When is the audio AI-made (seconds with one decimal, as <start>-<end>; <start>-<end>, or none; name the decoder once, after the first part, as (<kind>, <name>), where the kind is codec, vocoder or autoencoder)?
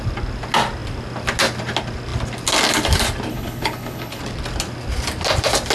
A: 3.3-4.2 (codec, HILCodec)